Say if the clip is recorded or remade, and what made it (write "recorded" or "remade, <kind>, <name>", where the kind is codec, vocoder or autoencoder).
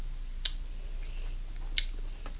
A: recorded